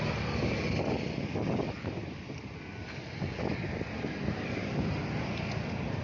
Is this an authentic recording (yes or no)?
yes